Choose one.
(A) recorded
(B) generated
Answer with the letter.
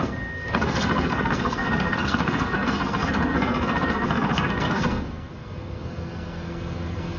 B